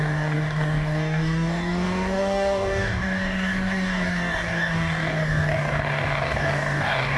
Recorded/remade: remade